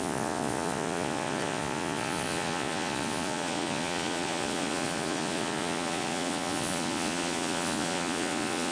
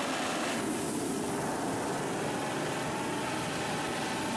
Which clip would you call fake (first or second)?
first